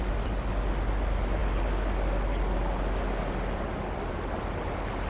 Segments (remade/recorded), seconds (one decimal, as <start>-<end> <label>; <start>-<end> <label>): 0.0-5.1 recorded